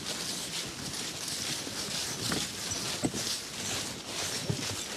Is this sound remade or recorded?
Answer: recorded